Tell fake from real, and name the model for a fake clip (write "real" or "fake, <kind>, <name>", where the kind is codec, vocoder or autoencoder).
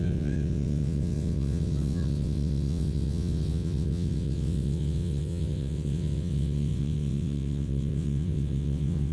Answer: fake, vocoder, WaveNeXt